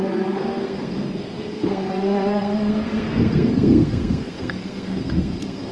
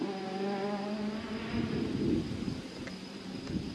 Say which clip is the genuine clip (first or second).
second